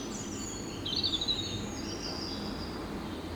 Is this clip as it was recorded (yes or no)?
yes